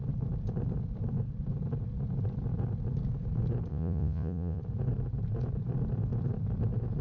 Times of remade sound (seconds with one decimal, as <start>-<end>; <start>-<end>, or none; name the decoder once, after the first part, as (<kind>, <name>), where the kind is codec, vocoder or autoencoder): 3.7-4.6 (vocoder, Vocos)